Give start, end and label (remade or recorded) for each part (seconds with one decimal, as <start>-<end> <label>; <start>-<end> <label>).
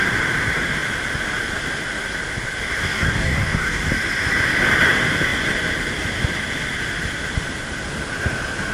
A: 0.0-2.8 recorded; 2.8-3.9 remade; 3.9-8.7 recorded